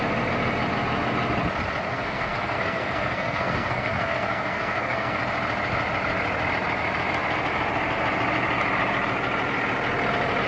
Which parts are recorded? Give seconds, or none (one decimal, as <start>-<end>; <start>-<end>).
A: 0.0-1.8; 5.2-10.5